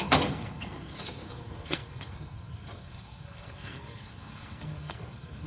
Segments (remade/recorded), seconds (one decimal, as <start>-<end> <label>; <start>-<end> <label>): 0.0-5.5 remade